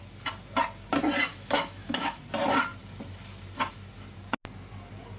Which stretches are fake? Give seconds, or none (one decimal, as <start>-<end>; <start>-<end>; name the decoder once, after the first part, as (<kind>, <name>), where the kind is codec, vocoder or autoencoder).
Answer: 1.3-2.2 (autoencoder, DAC-VAE)